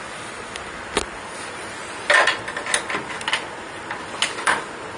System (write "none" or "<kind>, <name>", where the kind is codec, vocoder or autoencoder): none